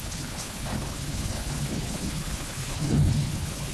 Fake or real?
fake